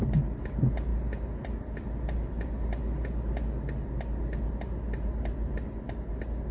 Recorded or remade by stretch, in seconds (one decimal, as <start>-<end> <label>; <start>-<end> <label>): 0.0-6.5 recorded